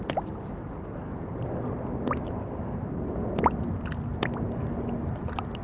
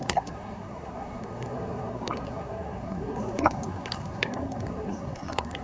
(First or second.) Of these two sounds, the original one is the first